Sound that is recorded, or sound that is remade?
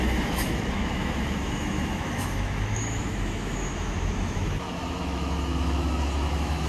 remade